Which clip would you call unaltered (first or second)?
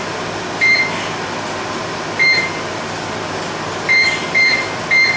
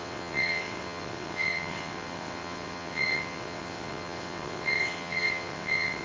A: first